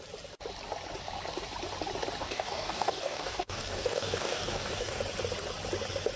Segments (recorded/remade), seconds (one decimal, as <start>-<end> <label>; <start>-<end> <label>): 0.0-2.2 recorded; 2.2-5.0 remade; 5.0-6.2 recorded